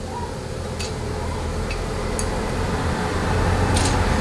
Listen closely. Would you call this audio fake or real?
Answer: real